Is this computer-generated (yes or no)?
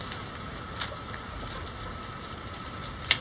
no